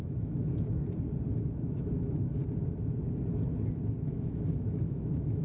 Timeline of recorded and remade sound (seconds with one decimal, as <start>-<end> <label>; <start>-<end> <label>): 0.0-0.8 remade; 0.8-1.5 recorded; 1.5-2.4 remade; 2.4-4.0 recorded; 4.0-5.4 remade